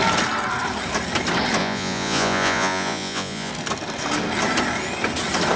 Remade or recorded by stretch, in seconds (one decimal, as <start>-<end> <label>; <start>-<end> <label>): 0.0-1.6 recorded; 1.6-3.5 remade; 3.5-5.6 recorded